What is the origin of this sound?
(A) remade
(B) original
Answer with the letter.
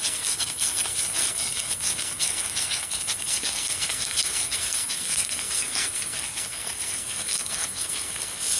A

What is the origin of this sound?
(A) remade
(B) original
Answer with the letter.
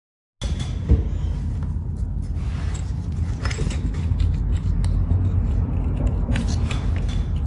B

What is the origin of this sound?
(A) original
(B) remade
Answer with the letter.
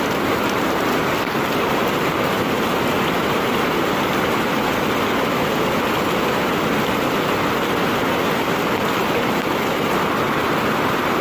A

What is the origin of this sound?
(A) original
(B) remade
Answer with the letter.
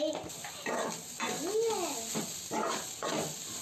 A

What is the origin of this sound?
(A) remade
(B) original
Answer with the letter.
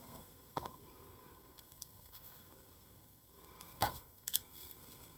A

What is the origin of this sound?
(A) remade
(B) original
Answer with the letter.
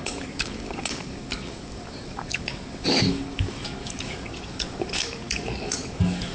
A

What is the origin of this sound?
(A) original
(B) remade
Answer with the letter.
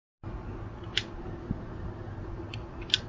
A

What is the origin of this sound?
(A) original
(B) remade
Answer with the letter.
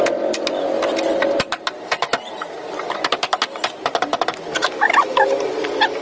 A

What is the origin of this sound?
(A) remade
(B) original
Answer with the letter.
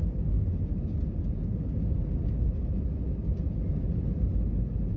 B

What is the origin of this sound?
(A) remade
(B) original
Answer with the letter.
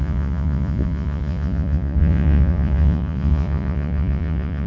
A